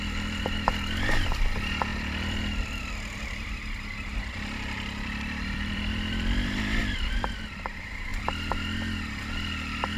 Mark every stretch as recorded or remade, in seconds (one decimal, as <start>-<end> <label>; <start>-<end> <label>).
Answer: 0.0-1.9 recorded; 1.9-2.8 remade; 2.8-4.1 recorded; 4.1-6.8 remade; 6.8-10.0 recorded